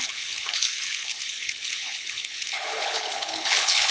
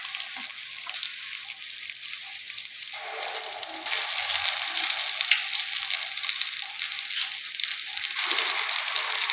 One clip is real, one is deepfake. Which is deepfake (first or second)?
first